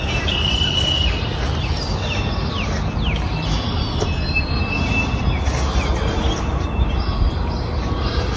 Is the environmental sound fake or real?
real